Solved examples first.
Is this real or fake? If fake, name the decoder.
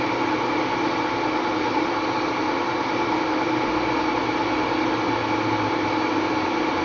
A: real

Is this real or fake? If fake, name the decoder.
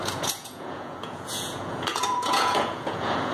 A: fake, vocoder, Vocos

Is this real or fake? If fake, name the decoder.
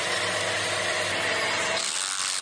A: real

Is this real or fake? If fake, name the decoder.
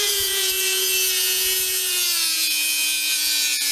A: fake, vocoder, Vocos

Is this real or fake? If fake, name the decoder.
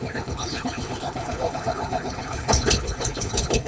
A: fake, codec, HILCodec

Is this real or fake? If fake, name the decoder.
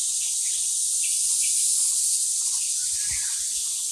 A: real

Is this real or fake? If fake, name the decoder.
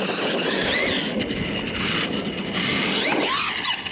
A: real